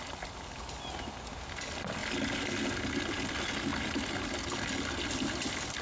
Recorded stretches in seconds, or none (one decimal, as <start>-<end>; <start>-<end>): 0.0-5.8

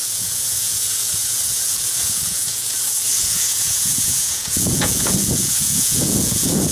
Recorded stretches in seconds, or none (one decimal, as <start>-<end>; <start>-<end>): none

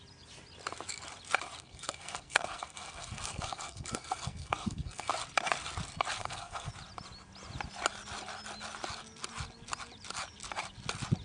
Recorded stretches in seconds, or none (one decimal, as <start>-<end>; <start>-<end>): 0.0-1.6; 5.1-6.2; 6.7-11.2

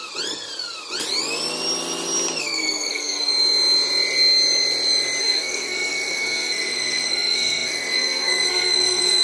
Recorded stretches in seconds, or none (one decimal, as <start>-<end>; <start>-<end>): 0.0-2.4; 3.3-5.2

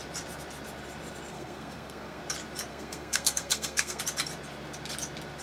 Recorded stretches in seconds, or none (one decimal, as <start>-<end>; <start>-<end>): 0.0-1.3; 2.2-2.7; 4.0-5.4

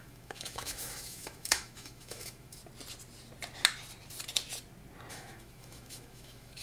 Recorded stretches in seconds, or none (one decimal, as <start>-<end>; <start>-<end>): 2.6-5.1

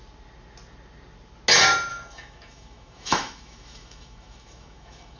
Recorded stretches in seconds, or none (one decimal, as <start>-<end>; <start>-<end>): 0.0-1.9

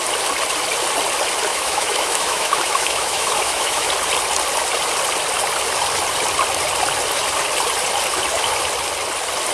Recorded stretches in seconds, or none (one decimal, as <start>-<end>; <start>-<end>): 0.0-1.5; 3.9-9.5